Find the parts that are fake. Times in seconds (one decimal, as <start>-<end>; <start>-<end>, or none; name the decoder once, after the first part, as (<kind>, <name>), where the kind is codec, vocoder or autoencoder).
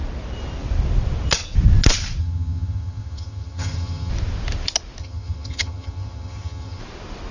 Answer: 2.2-4.1 (vocoder, HiFi-GAN); 5.0-6.8